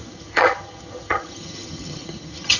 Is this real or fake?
fake